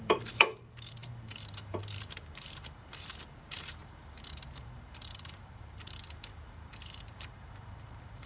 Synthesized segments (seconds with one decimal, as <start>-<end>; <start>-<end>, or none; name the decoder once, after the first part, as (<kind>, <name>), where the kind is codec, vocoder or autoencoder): 0.0-8.3 (vocoder, BigVGAN v2)